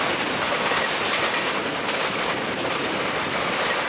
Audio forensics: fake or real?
real